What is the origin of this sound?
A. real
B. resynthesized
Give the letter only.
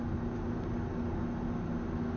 A